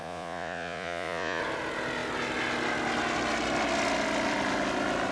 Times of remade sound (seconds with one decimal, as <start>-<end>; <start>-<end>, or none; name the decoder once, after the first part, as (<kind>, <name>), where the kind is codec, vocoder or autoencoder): 0.0-1.4 (vocoder, Vocos)